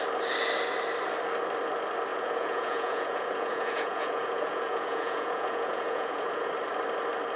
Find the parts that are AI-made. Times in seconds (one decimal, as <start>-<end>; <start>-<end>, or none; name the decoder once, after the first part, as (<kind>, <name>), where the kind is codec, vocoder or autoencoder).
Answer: 2.1-6.5 (vocoder, Vocos)